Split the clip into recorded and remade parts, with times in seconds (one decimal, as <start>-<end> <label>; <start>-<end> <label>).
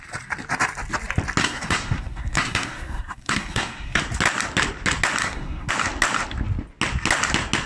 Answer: 0.0-1.4 recorded; 1.4-4.0 remade; 4.0-5.2 recorded; 5.2-5.7 remade; 5.7-7.7 recorded